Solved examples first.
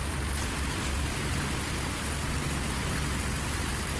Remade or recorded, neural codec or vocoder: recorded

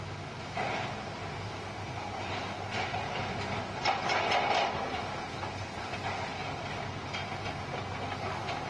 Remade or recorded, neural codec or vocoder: recorded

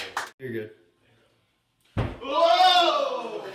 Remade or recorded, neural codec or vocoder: recorded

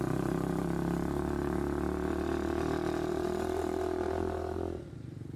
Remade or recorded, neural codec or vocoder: remade, vocoder, BigVGAN v2